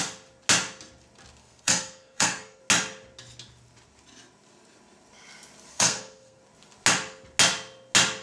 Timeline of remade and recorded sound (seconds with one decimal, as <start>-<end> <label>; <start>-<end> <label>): 0.0-1.4 recorded; 1.4-2.6 remade; 2.6-5.7 recorded; 5.7-6.4 remade; 6.4-8.2 recorded